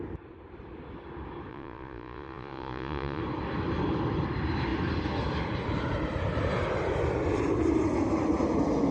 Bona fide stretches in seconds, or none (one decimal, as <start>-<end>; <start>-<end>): 0.0-1.5; 3.2-8.9